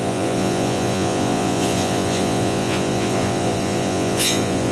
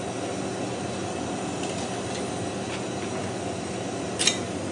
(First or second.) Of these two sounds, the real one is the second